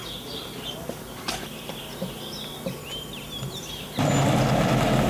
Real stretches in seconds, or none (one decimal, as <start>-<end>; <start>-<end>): 0.0-2.8; 3.7-5.1